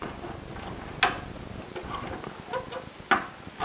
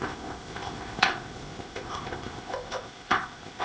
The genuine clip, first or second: first